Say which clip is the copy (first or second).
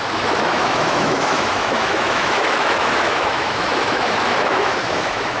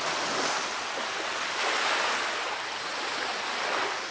first